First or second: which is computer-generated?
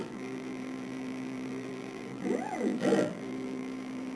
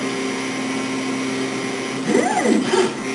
first